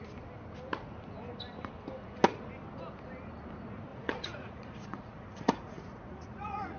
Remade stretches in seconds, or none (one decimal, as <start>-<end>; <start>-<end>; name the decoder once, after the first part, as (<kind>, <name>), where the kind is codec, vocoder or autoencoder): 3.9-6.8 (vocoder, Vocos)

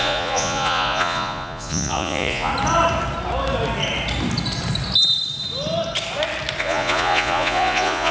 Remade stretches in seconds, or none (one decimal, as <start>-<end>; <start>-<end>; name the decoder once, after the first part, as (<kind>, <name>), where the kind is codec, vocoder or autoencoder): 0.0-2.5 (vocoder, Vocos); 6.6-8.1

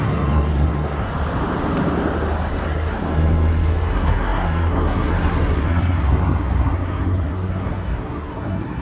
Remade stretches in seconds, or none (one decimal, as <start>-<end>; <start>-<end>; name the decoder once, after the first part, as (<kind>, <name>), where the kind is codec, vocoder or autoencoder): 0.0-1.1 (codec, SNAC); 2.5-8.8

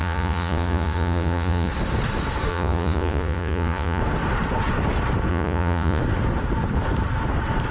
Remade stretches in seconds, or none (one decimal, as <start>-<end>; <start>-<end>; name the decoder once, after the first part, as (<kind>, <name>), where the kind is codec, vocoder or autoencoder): 0.0-1.7 (vocoder, Vocos); 2.5-4.0; 5.3-6.0

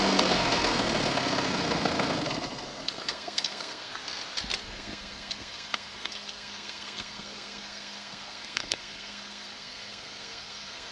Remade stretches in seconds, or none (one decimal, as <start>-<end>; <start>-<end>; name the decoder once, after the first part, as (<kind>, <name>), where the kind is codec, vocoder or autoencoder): 0.0-3.9 (codec, SNAC); 4.6-10.9

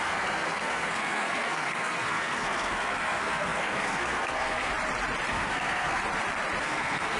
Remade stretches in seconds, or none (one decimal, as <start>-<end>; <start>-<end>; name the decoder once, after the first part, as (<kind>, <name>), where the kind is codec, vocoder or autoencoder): 0.0-4.7 (codec, SNAC); 5.3-6.0; 6.6-7.2